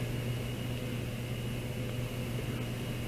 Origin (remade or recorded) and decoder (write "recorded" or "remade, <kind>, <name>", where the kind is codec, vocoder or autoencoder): recorded